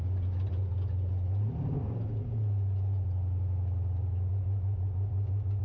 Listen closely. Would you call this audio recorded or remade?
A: recorded